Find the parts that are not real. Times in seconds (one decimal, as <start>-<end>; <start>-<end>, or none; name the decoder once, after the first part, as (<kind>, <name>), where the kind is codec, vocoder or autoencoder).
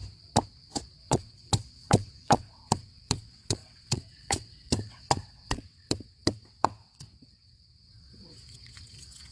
1.0-9.3 (vocoder, WaveNeXt)